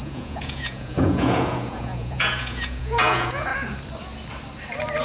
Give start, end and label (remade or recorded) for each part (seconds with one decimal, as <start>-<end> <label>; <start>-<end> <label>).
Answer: 0.0-3.5 remade; 3.5-5.0 recorded